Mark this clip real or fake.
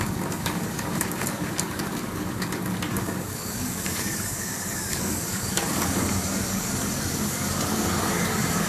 fake